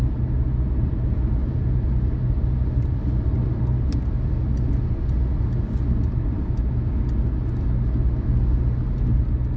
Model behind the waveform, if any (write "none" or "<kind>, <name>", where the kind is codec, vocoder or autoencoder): none